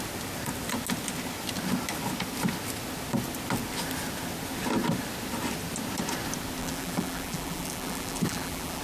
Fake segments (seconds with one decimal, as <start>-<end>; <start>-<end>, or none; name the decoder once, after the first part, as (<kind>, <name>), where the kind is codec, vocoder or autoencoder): 6.6-8.8 (vocoder, BigVGAN v2)